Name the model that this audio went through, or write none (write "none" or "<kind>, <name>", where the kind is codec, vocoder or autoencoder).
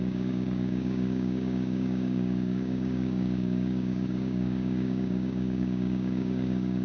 codec, DAC